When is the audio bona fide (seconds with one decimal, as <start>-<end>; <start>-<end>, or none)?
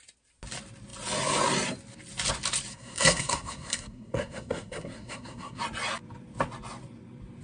0.0-2.7; 5.6-7.4